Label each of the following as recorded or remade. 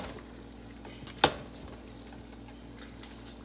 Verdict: recorded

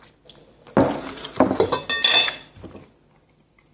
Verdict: recorded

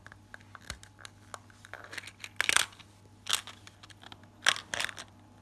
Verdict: recorded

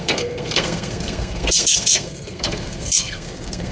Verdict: remade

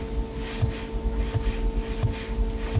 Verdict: recorded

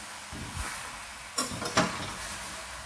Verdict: recorded